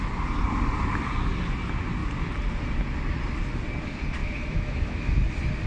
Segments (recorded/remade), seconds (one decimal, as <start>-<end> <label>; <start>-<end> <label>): 0.0-4.2 recorded; 4.2-5.1 remade; 5.1-5.7 recorded